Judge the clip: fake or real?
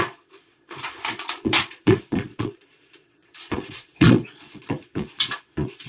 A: fake